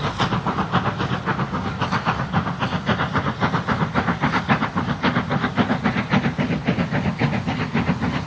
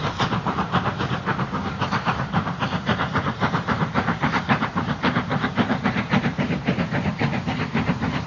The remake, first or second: second